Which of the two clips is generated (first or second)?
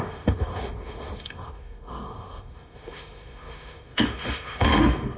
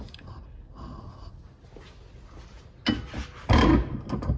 first